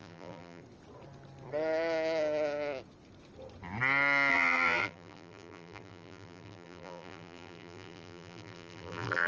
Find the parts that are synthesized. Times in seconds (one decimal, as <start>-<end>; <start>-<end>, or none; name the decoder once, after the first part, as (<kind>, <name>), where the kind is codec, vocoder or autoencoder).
0.0-0.6 (vocoder, BigVGAN v2); 4.3-9.3